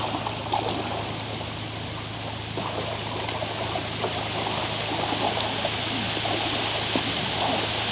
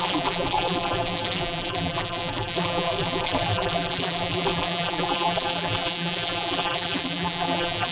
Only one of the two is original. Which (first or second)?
first